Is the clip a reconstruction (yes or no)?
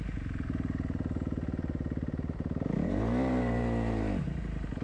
yes